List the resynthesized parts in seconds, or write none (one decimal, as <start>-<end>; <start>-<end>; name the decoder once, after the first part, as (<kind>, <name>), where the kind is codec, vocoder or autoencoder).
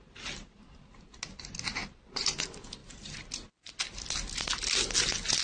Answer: none